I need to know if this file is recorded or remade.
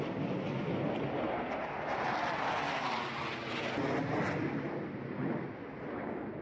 recorded